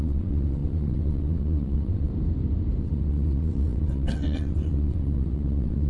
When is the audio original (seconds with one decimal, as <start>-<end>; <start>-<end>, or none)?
2.1-2.8